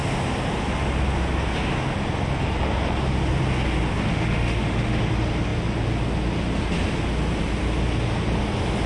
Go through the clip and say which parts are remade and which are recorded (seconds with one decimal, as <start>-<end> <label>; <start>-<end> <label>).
0.0-4.1 recorded; 4.1-5.0 remade; 5.0-8.9 recorded

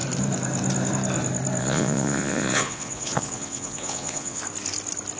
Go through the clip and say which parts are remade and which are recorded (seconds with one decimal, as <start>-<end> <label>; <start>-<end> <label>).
0.0-1.6 recorded; 1.6-4.4 remade; 4.4-5.2 recorded

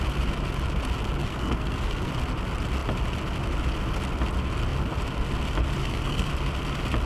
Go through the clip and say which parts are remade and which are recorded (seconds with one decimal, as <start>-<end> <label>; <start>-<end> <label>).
0.0-1.2 recorded; 1.2-2.1 remade; 2.1-5.8 recorded; 5.8-6.3 remade; 6.3-7.1 recorded

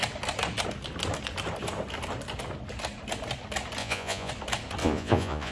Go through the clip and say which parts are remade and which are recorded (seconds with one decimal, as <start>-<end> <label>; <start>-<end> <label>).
0.0-3.8 recorded; 3.8-4.3 remade; 4.3-4.8 recorded; 4.8-5.5 remade

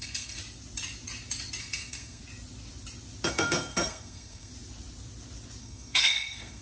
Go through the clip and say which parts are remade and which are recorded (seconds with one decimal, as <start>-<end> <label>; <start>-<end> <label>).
0.0-0.4 remade; 0.4-1.6 recorded; 1.6-2.2 remade; 2.2-3.3 recorded; 3.3-4.5 remade; 4.5-5.6 recorded; 5.6-6.6 remade